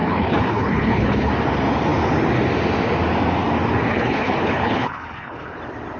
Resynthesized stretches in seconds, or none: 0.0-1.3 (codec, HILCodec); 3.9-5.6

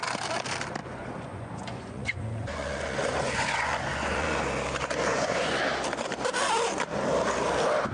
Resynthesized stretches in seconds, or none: 0.8-4.4 (vocoder, Vocos); 5.1-5.6

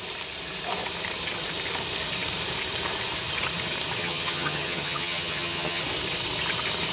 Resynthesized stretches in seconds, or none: 4.0-5.8 (vocoder, HiFi-GAN)

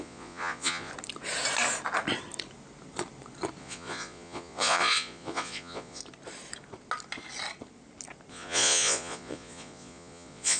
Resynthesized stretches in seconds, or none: 0.0-0.9 (vocoder, Vocos); 3.6-6.0; 8.3-10.6

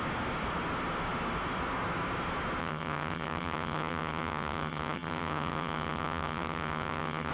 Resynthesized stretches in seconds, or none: 2.6-7.3 (vocoder, HiFi-GAN)